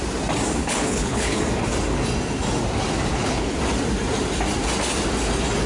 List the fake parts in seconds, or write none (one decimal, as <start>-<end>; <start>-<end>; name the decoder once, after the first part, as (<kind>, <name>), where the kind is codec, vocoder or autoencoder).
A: 0.6-1.4 (codec, HILCodec); 3.1-3.6